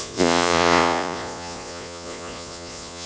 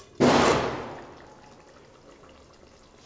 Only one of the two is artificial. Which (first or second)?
first